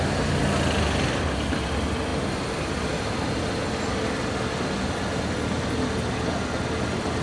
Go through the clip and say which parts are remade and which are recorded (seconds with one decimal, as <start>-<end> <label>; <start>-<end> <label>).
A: 0.0-7.2 recorded